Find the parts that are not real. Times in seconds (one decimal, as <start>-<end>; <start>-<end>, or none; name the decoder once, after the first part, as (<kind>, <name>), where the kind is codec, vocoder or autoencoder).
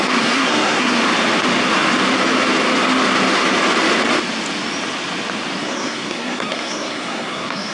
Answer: 0.0-1.0 (codec, SNAC); 5.6-7.7